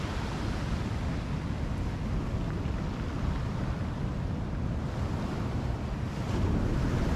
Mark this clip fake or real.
real